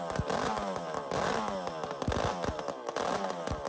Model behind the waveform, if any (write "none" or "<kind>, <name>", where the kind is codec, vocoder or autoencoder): none